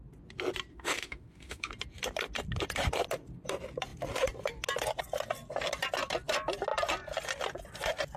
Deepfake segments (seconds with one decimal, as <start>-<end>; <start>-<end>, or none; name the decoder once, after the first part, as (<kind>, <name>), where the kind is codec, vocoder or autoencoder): 0.7-1.7 (autoencoder, DAC-VAE)